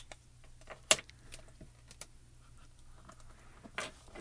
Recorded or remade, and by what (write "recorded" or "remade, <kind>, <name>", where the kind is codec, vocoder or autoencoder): recorded